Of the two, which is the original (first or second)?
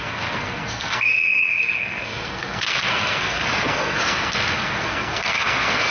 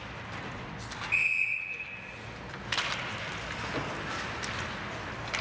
second